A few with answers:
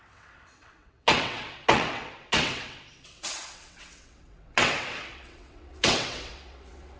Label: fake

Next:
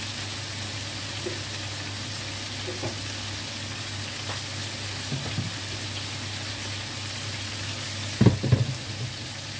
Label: real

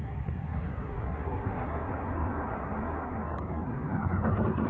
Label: fake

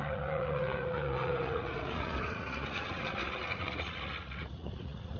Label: fake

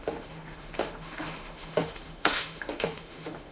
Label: fake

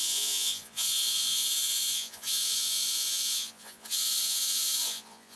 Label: fake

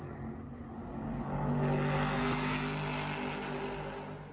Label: real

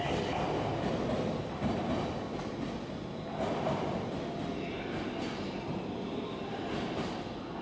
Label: real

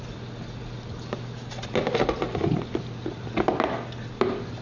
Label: real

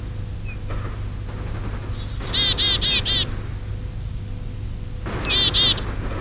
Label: real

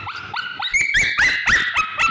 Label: real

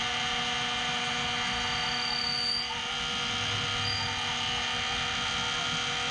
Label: real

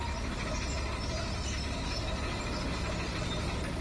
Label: real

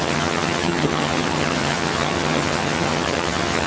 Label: fake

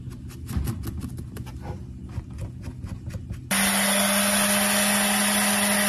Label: real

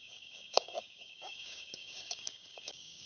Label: fake